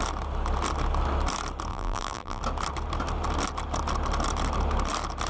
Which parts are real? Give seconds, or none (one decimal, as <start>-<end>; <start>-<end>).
0.0-1.7; 2.4-5.3